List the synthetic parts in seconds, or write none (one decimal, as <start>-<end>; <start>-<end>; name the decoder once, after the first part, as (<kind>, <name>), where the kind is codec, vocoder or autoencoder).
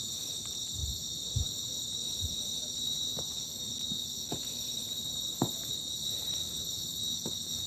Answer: 0.0-3.1 (vocoder, BigVGAN v2); 4.4-6.9